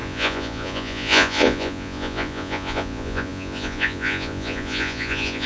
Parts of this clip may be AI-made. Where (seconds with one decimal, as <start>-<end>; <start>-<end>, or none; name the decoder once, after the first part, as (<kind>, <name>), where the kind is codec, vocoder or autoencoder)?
0.0-5.5 (vocoder, Vocos)